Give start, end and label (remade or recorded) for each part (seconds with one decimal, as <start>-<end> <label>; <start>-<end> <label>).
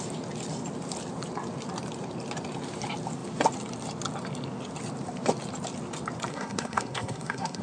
0.0-6.3 recorded; 6.3-7.6 remade